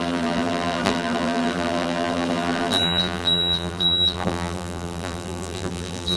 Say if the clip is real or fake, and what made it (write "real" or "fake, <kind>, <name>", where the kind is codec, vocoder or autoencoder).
fake, vocoder, BigVGAN v2